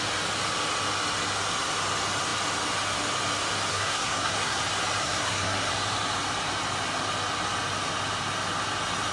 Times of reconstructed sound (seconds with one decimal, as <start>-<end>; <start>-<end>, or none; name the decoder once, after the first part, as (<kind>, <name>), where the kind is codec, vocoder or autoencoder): 3.7-4.6 (codec, SNAC); 5.0-5.7